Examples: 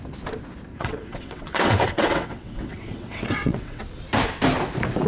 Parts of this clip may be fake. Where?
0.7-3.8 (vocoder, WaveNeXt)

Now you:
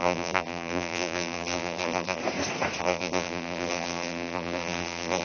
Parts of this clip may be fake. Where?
0.0-2.2 (vocoder, BigVGAN v2); 2.8-5.2

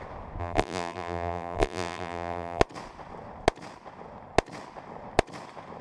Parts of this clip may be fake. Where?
0.4-2.6 (vocoder, BigVGAN v2)

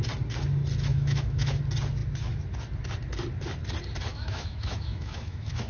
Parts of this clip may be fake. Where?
0.9-1.6 (autoencoder, DAC-VAE); 4.1-5.7

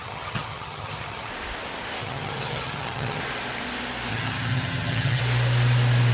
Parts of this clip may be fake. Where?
0.0-1.3 (vocoder, HiFi-GAN); 2.0-3.2; 4.1-5.2